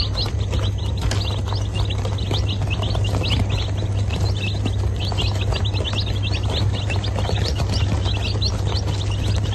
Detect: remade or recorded recorded